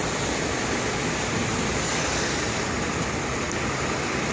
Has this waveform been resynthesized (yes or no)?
no